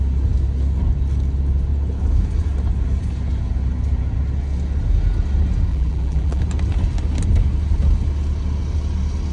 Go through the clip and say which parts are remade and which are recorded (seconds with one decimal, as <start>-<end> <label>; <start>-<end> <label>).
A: 0.0-5.7 recorded; 5.7-6.4 remade; 6.4-9.3 recorded

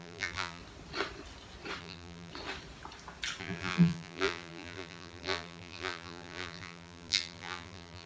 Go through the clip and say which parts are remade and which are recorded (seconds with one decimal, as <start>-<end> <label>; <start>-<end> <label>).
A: 0.0-0.6 remade; 0.6-1.8 recorded; 1.8-2.3 remade; 2.3-3.4 recorded; 3.4-8.1 remade

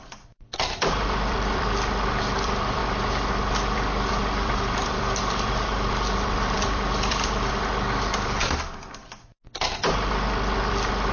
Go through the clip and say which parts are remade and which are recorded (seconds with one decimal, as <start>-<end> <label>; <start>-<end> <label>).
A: 0.0-2.8 remade; 2.8-3.3 recorded; 3.3-8.4 remade; 8.4-10.7 recorded; 10.7-11.1 remade

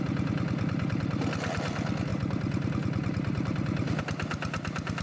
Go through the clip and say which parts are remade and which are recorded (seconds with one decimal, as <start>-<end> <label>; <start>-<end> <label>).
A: 0.0-5.0 recorded

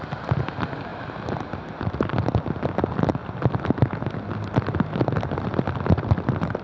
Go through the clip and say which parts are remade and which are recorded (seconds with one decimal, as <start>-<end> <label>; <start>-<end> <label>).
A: 0.0-0.9 recorded; 0.9-1.6 remade; 1.6-6.6 recorded

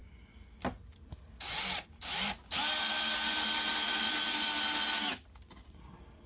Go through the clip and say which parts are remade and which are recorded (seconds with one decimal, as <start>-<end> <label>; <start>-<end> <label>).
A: 0.0-6.3 recorded

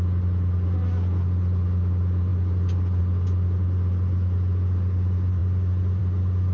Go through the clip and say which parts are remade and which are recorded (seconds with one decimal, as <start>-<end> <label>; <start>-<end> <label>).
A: 0.0-6.5 recorded

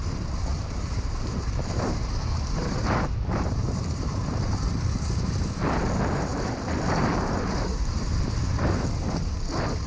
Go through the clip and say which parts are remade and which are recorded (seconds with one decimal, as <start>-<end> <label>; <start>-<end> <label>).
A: 0.0-0.5 recorded; 0.5-4.2 remade; 4.2-7.0 recorded; 7.0-8.6 remade; 8.6-9.9 recorded